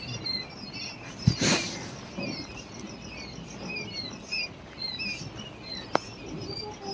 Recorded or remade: recorded